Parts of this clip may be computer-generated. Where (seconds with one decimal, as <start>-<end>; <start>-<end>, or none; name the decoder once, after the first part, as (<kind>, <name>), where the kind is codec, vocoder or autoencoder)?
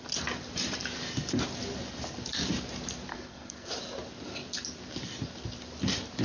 3.1-3.7 (codec, SNAC)